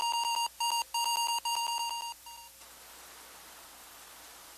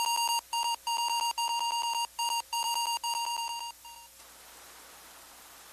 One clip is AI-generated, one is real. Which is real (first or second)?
first